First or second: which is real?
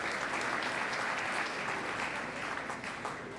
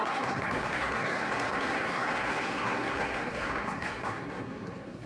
first